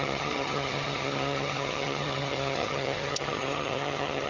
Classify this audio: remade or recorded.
remade